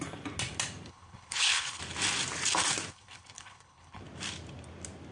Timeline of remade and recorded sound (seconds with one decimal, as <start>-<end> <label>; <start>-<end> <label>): 0.0-0.9 recorded; 0.9-1.8 remade; 1.8-2.9 recorded; 2.9-4.0 remade; 4.0-5.1 recorded

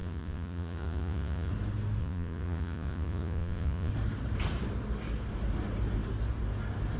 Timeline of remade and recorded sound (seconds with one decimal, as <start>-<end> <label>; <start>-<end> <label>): 0.0-1.5 remade; 1.5-2.0 recorded; 2.0-3.9 remade; 3.9-7.0 recorded

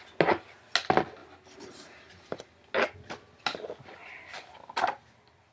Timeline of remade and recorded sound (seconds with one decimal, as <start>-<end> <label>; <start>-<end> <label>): 0.0-1.2 recorded; 1.2-2.4 remade; 2.4-5.5 recorded

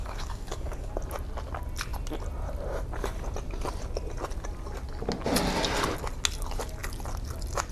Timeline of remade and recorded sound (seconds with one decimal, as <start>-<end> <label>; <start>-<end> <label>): 0.0-0.9 remade; 0.9-7.7 recorded